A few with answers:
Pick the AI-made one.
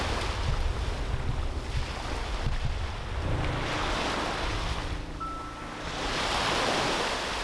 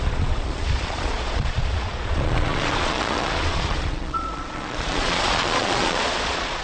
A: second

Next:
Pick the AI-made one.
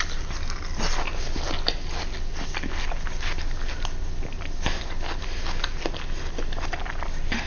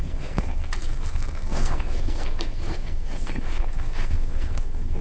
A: second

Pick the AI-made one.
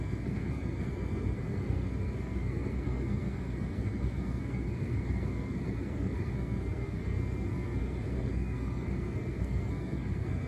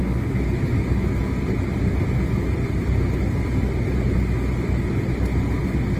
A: first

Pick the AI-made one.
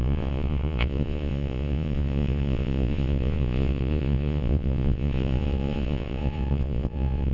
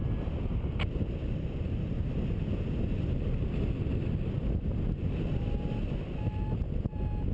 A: first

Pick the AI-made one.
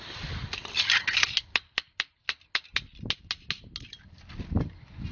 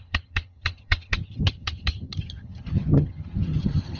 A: second